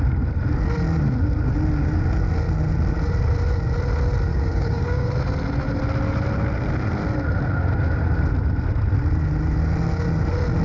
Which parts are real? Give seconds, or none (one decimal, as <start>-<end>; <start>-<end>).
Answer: 0.0-4.3; 5.1-10.6